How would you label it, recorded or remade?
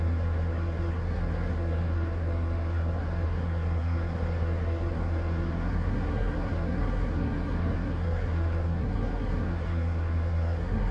remade